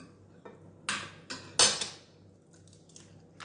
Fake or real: real